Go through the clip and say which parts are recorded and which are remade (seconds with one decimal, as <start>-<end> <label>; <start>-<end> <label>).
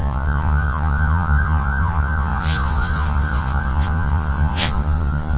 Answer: 0.0-5.4 remade